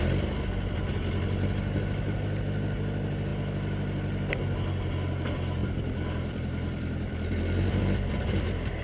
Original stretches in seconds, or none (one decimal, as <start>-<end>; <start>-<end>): 0.0-8.8